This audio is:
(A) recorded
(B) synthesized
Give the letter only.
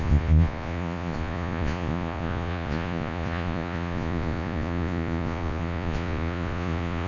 B